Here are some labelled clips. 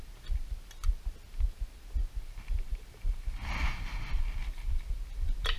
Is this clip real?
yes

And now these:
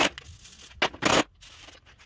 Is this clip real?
yes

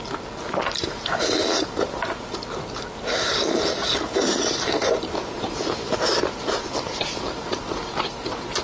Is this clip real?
no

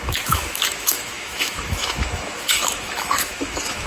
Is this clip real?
no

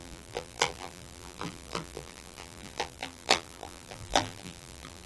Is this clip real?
no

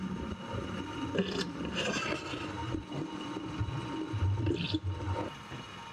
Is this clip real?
yes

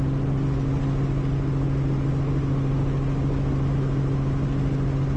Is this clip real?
yes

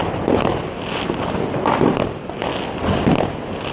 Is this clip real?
yes